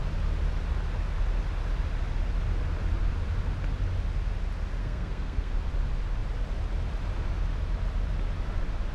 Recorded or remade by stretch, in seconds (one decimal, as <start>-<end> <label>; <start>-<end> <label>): 0.0-4.8 recorded; 4.8-5.5 remade; 5.5-8.9 recorded